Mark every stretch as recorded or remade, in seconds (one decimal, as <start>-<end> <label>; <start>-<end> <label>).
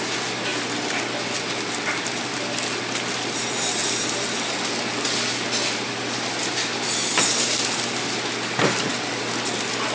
0.0-9.9 recorded